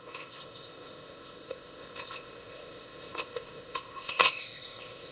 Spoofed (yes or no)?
yes